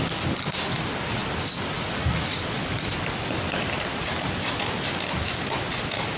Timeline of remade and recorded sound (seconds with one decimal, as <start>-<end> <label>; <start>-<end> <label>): 0.0-6.2 recorded